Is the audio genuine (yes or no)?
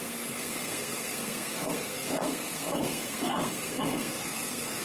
no